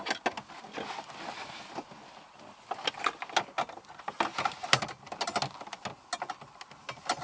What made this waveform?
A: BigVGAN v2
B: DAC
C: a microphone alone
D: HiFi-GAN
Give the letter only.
C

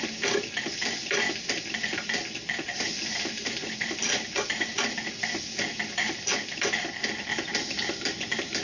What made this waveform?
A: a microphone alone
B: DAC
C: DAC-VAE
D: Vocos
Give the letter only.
A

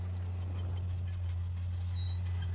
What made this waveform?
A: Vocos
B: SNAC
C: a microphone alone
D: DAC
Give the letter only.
C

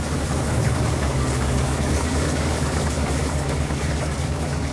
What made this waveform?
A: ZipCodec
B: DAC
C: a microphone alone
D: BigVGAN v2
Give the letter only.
B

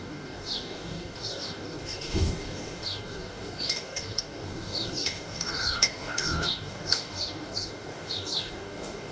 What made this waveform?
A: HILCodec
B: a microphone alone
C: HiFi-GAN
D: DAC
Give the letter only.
D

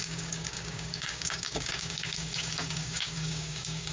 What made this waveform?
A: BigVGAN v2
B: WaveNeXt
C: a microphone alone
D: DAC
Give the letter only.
D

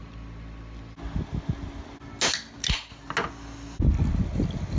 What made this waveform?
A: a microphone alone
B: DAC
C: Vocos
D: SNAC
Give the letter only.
A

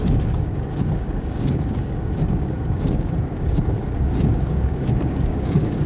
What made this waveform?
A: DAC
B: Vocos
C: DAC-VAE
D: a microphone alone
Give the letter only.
A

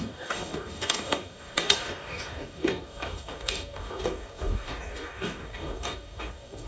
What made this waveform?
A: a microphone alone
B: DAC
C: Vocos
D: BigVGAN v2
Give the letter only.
B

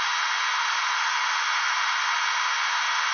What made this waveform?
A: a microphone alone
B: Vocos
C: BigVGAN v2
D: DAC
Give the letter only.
A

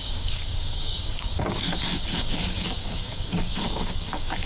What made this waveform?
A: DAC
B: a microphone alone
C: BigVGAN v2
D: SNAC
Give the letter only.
A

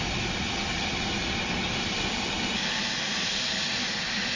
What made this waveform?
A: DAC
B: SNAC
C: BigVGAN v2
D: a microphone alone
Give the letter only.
D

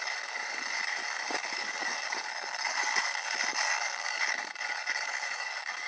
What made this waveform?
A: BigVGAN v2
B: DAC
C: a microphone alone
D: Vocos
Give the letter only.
B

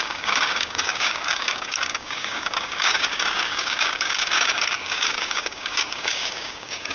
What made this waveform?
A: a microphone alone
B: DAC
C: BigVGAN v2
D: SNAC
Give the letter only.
B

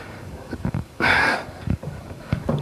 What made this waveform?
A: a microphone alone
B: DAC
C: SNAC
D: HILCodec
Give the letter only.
B